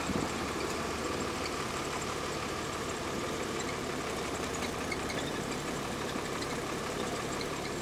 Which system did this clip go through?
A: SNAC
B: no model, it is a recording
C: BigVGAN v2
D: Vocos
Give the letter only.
C